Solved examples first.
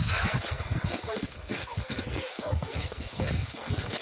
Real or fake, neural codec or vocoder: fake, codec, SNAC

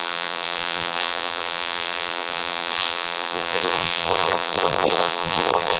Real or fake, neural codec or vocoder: fake, vocoder, BigVGAN v2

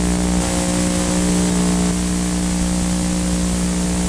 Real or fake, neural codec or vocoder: real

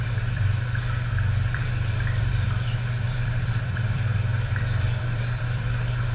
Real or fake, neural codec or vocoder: fake, vocoder, BigVGAN v2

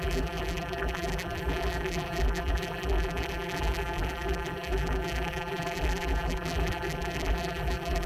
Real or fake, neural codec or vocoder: fake, vocoder, BigVGAN v2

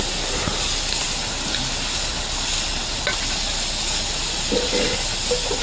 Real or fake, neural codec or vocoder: real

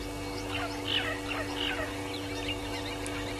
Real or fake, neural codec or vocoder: real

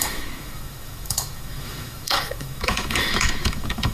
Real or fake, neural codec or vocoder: fake, autoencoder, DAC-VAE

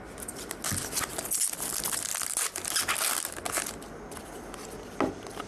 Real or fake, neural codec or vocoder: real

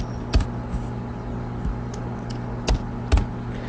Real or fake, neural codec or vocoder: real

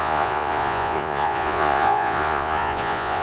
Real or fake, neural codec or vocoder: fake, vocoder, Vocos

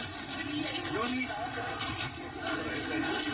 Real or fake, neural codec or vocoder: real